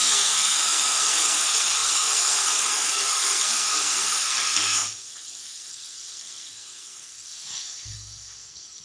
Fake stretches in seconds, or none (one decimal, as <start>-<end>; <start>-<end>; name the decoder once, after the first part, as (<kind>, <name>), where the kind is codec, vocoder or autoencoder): 0.0-8.8 (codec, SNAC)